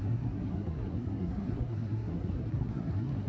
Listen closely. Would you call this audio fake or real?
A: fake